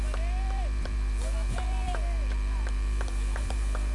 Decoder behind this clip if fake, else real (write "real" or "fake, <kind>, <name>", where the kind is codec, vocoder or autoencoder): fake, vocoder, BigVGAN v2